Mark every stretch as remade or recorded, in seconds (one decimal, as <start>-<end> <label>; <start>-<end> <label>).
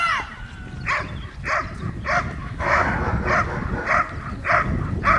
0.0-2.4 recorded; 2.4-3.1 remade; 3.1-5.2 recorded